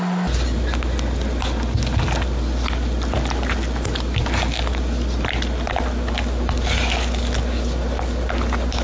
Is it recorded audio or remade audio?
recorded